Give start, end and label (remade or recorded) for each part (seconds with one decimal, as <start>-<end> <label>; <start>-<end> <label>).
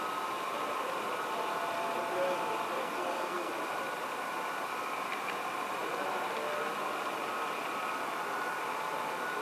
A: 0.0-2.8 recorded; 2.8-3.5 remade; 3.5-9.4 recorded